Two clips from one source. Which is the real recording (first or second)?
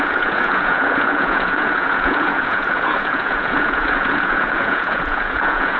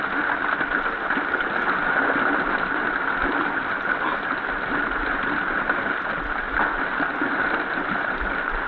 second